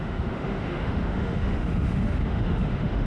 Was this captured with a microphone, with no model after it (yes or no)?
no